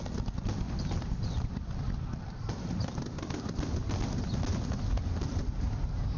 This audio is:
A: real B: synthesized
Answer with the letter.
A